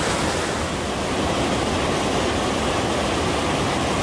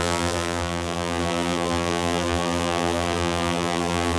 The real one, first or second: first